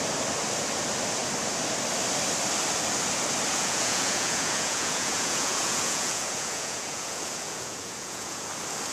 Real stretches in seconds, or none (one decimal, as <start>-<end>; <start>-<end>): 0.0-3.5; 8.5-8.9